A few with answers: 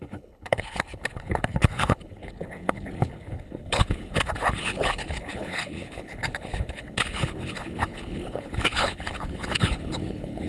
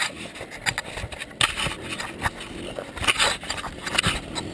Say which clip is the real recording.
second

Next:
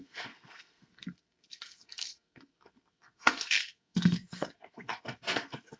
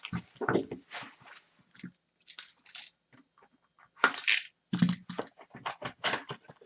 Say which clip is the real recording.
second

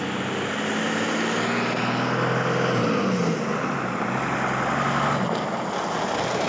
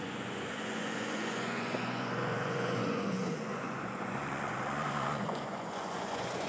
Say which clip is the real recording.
first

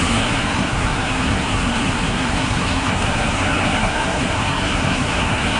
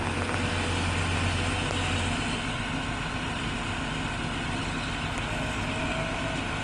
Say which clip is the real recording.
second